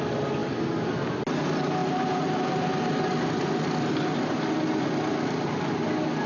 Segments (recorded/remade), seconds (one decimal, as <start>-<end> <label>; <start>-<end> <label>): 0.0-6.3 recorded